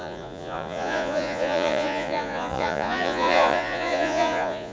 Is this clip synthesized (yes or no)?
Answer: yes